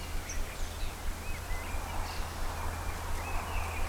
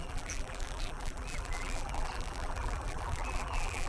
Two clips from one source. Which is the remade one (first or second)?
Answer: second